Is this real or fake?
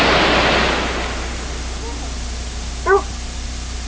real